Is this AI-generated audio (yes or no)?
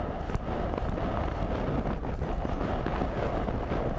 no